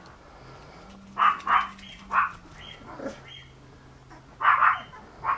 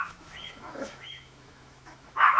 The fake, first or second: second